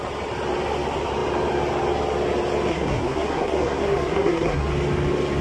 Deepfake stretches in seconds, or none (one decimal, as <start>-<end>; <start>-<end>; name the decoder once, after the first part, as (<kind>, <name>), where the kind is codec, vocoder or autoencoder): 2.7-4.7 (codec, SNAC)